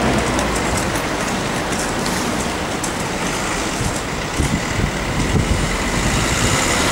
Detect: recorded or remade recorded